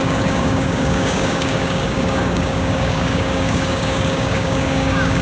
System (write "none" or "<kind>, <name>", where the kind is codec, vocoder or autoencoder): codec, DAC